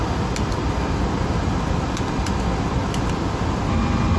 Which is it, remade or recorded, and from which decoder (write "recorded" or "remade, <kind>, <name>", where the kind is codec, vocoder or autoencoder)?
recorded